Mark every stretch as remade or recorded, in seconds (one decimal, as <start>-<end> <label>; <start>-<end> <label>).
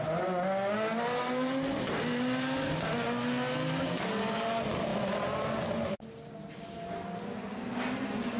0.0-8.4 recorded